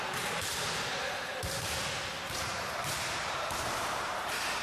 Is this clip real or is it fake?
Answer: fake